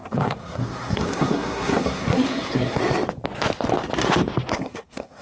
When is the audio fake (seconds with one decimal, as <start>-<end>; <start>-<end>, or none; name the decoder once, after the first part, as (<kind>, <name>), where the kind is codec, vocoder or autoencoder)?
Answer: 0.0-2.8 (codec, SNAC); 4.5-5.2

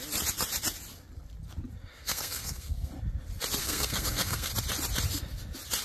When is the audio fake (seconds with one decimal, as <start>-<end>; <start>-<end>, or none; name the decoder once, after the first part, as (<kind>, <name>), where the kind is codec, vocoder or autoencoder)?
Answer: 1.9-2.9 (codec, SNAC); 3.6-4.5

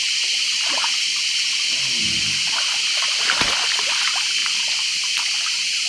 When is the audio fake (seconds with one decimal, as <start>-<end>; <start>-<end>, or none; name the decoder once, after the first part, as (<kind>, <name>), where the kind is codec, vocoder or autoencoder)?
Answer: none

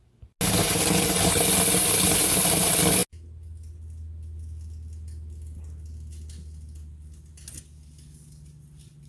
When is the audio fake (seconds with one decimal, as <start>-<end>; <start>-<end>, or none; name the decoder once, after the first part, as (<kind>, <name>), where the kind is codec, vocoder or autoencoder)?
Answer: none

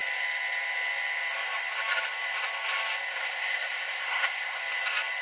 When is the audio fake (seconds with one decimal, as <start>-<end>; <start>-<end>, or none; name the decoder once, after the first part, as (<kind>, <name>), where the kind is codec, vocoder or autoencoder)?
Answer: 3.1-4.6 (codec, SNAC)

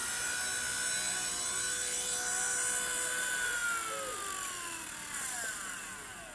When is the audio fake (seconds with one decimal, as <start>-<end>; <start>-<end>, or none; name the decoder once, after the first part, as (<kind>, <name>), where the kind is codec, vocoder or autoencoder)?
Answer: none

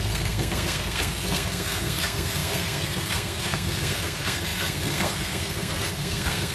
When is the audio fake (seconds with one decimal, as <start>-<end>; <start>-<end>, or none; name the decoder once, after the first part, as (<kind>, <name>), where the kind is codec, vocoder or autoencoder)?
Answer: 0.0-6.5 (codec, SNAC)

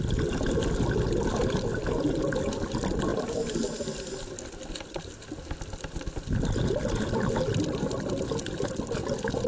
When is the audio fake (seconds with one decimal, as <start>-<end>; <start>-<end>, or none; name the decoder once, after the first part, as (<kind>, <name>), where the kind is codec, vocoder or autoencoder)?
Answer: none